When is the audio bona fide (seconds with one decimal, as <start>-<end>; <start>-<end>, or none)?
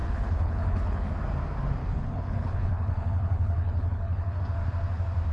1.1-1.8; 4.4-5.3